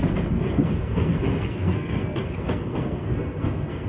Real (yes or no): no